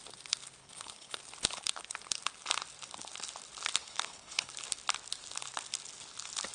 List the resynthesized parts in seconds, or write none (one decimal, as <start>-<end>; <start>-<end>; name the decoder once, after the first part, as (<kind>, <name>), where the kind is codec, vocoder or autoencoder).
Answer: 0.6-1.2 (codec, HILCodec); 3.8-4.5